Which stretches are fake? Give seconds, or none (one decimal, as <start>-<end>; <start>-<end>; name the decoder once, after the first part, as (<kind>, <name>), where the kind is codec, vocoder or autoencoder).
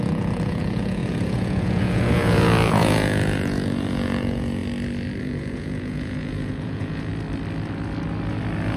0.0-4.6 (vocoder, Vocos); 5.2-7.1